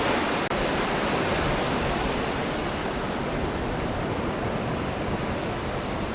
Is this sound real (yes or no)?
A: yes